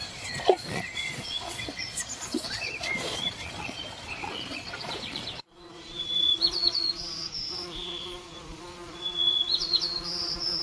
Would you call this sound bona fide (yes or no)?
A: no